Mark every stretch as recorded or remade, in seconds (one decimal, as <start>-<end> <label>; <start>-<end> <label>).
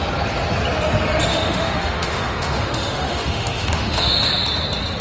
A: 0.0-1.3 recorded; 1.3-4.3 remade; 4.3-5.0 recorded